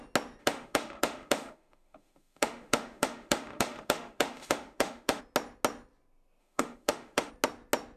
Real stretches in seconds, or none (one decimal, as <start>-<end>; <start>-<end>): 0.0-0.4; 5.2-6.4; 7.3-8.0